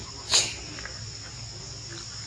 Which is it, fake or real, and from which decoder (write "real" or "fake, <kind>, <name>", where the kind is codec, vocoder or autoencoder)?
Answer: real